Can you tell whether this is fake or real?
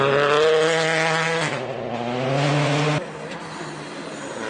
real